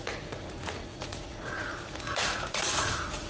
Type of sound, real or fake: fake